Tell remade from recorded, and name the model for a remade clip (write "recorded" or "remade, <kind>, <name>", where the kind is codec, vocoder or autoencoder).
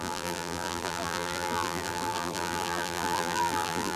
remade, vocoder, BigVGAN v2